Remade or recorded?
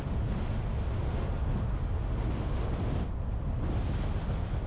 recorded